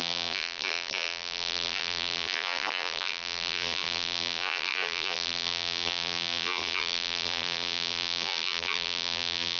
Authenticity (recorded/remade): remade